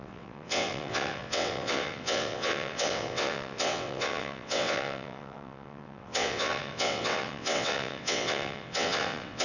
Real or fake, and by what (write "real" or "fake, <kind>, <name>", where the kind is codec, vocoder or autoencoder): fake, vocoder, WaveNeXt